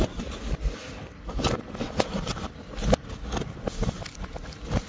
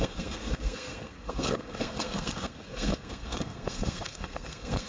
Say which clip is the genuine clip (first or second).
first